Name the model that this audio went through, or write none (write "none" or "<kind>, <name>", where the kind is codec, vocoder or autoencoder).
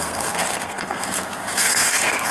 codec, SNAC